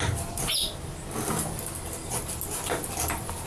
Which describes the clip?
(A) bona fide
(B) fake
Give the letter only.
A